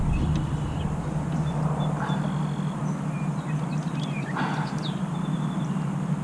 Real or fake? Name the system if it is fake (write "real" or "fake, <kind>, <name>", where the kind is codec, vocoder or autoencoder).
real